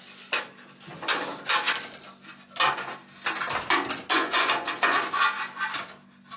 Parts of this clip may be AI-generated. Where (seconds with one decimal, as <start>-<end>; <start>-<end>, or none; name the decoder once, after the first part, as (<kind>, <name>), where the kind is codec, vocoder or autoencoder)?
4.1-5.2 (vocoder, Vocos)